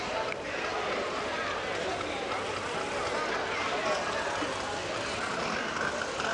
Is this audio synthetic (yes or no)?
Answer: no